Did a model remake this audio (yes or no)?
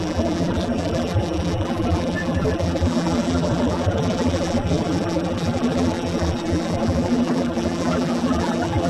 yes